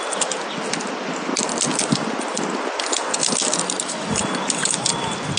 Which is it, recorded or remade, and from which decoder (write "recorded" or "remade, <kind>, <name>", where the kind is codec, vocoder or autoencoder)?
recorded